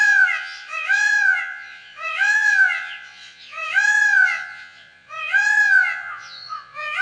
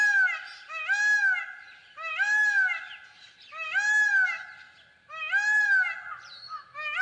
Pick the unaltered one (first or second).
second